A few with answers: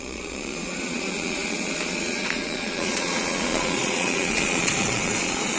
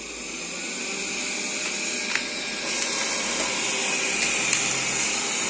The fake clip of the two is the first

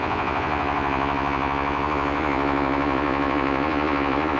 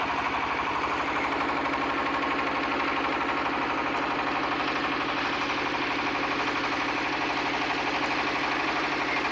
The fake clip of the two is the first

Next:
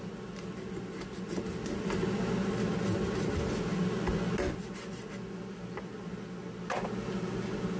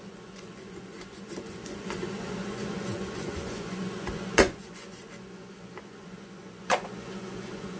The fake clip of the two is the second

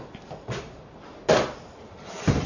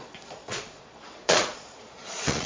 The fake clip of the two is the second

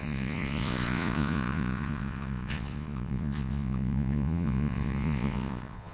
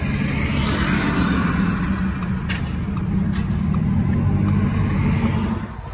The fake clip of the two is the first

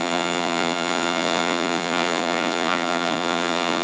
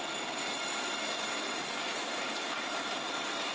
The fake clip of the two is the first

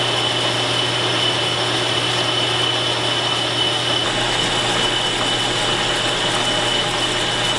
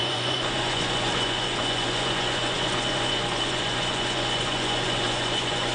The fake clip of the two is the second